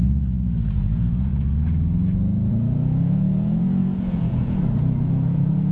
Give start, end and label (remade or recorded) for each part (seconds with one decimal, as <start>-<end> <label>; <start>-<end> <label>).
0.0-1.3 remade; 1.3-2.5 recorded; 2.5-5.7 remade